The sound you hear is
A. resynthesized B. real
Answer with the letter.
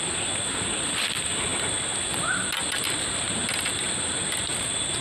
B